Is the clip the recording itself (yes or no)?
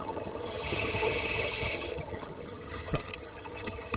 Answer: no